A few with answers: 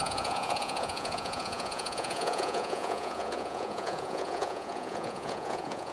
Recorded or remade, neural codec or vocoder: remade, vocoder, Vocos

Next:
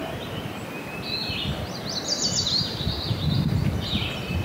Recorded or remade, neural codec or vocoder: recorded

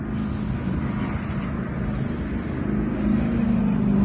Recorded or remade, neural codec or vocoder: recorded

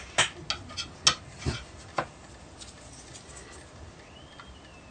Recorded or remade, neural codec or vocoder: recorded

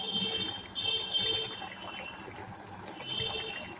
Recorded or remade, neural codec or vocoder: recorded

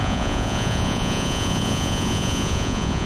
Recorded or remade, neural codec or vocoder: remade, vocoder, Vocos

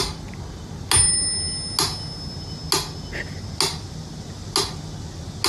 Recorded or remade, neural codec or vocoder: recorded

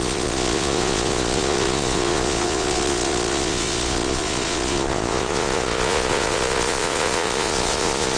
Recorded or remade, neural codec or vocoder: remade, vocoder, Vocos